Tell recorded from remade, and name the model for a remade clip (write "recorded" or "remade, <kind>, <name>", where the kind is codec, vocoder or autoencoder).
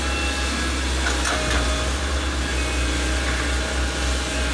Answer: recorded